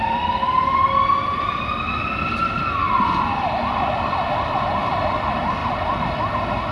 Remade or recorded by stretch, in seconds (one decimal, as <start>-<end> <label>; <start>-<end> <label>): 0.0-6.7 recorded

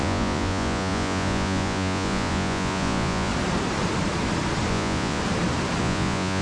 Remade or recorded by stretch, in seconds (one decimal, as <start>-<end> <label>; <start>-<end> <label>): 0.0-3.3 remade; 3.3-4.7 recorded; 4.7-5.2 remade; 5.2-5.8 recorded; 5.8-6.4 remade

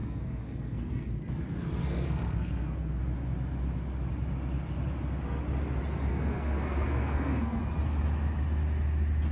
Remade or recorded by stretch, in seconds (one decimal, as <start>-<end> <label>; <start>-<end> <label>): 0.0-1.1 remade; 1.1-1.8 recorded; 1.8-3.0 remade; 3.0-6.1 recorded; 6.1-7.6 remade; 7.6-9.3 recorded

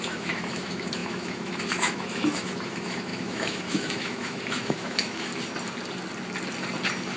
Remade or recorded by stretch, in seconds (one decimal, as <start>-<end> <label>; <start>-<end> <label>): 0.0-5.3 remade; 5.3-7.2 recorded

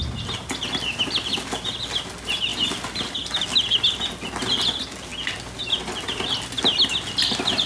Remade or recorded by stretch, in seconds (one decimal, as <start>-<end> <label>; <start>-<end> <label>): 0.0-7.7 recorded

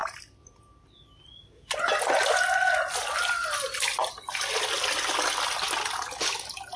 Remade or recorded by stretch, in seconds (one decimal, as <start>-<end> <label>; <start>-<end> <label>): 0.0-6.8 recorded

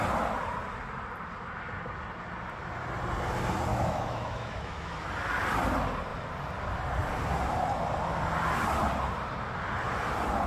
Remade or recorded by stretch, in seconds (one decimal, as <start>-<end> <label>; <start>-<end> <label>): 0.0-3.7 recorded; 3.7-5.1 remade; 5.1-10.5 recorded

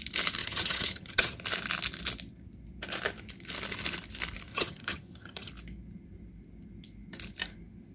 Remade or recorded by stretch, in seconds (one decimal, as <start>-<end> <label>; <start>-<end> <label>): 0.0-0.4 recorded; 0.4-1.4 remade; 1.4-4.5 recorded; 4.5-5.5 remade; 5.5-7.9 recorded